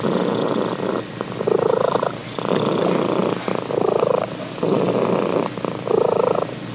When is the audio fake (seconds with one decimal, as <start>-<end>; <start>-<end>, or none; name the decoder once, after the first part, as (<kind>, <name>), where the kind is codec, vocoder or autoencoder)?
2.2-2.7 (vocoder, BigVGAN v2)

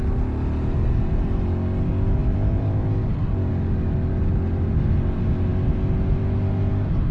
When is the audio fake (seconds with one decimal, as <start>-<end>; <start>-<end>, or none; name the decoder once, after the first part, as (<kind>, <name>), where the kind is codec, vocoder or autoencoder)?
2.2-3.5 (vocoder, BigVGAN v2)

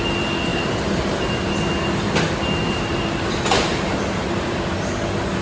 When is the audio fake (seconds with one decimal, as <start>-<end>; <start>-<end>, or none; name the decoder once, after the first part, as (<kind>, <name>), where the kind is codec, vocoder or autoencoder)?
0.5-1.6 (vocoder, BigVGAN v2); 2.6-4.7

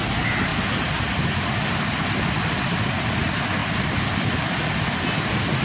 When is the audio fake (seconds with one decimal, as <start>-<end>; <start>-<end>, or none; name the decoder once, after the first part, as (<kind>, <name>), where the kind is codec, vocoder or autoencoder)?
3.6-4.3 (vocoder, BigVGAN v2)